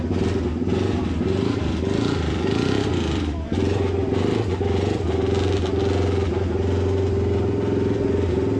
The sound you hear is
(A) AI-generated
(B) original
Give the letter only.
B